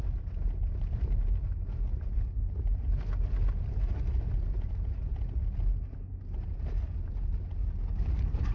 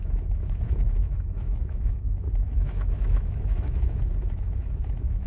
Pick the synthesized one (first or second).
second